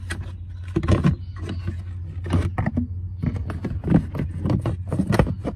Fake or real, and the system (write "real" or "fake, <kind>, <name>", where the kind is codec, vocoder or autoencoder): real